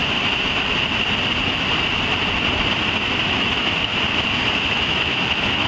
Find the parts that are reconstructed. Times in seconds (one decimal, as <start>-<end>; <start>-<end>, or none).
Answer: 3.4-3.9; 4.5-5.7